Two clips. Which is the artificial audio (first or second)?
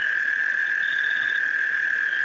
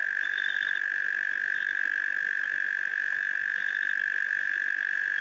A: first